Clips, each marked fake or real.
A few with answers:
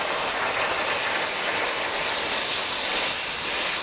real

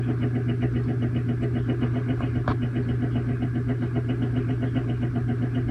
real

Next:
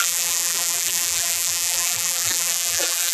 fake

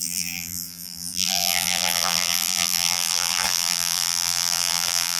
fake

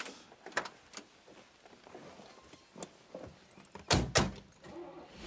real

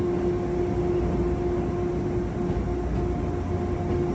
real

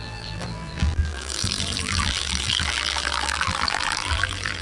fake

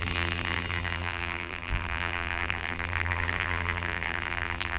fake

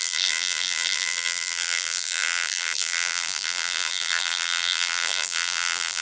fake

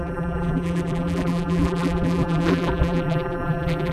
fake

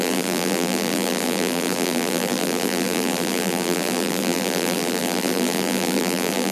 fake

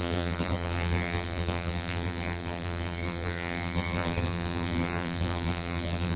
fake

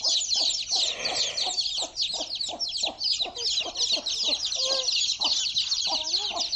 real